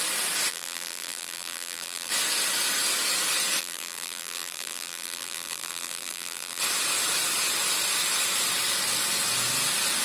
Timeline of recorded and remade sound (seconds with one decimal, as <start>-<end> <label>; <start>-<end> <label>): 0.0-0.5 recorded; 0.5-2.1 remade; 2.1-3.6 recorded; 3.6-6.6 remade; 6.6-10.0 recorded